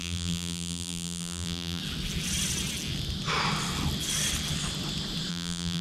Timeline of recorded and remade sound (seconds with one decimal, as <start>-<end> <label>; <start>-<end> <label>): 0.0-1.8 remade; 1.8-5.3 recorded; 5.3-5.8 remade